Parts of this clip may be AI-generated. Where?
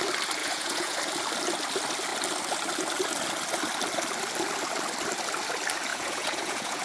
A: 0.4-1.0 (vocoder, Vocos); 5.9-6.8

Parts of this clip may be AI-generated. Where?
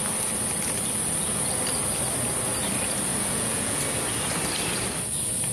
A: 3.1-3.8 (vocoder, Vocos)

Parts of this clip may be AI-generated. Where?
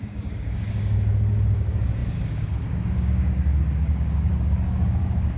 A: 0.0-5.4 (codec, DAC)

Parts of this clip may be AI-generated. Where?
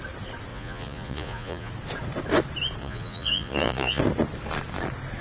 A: 0.5-1.7 (vocoder, Vocos); 2.8-4.0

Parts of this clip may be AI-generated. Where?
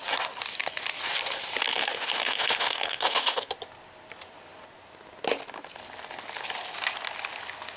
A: 1.7-3.5 (autoencoder, DAC-VAE)